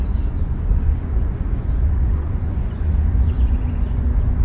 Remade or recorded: remade